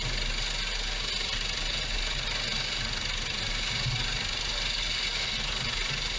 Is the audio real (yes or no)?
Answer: yes